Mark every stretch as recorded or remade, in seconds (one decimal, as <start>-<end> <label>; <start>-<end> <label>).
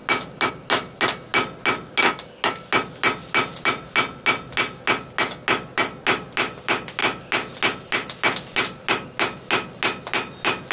0.0-10.7 recorded